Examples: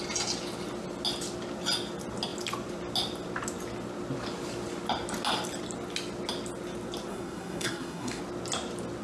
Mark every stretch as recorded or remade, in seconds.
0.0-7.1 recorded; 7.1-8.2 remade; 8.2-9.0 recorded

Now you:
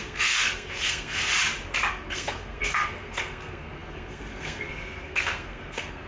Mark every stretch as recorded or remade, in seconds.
0.0-1.2 remade; 1.2-1.9 recorded; 1.9-6.1 remade

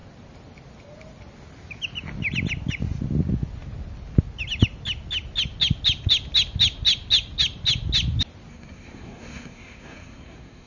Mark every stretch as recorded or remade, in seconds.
0.0-8.5 recorded; 8.5-10.7 remade

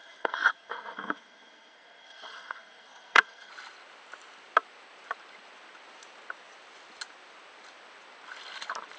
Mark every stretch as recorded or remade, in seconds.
0.0-3.5 remade; 3.5-9.0 recorded